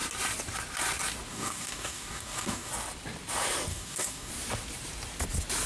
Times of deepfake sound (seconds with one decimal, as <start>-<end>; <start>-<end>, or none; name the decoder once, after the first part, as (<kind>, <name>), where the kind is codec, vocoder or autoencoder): 1.3-2.7 (codec, DAC); 3.7-4.3